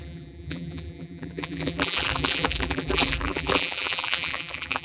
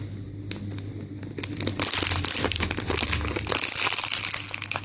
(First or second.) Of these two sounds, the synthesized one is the first